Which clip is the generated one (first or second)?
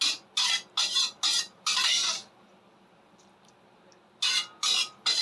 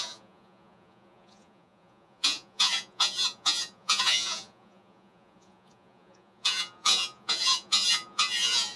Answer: second